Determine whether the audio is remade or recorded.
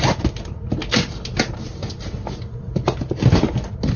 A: recorded